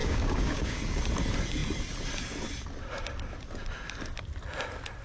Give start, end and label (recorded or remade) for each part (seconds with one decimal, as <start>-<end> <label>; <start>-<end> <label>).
0.0-0.8 remade; 0.8-5.0 recorded